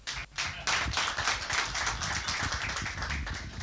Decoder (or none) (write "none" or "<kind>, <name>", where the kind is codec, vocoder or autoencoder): none